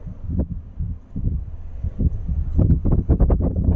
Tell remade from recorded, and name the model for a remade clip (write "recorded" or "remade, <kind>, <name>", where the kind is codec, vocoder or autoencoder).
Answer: recorded